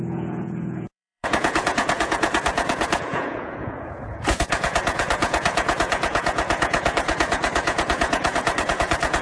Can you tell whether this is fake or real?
fake